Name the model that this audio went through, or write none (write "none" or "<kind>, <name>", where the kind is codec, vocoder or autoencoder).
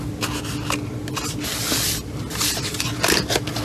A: none